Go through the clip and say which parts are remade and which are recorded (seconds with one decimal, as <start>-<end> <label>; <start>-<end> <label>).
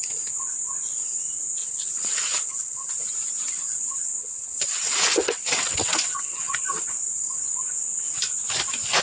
0.0-1.6 recorded; 1.6-2.9 remade; 2.9-4.2 recorded; 4.2-6.5 remade; 6.5-9.0 recorded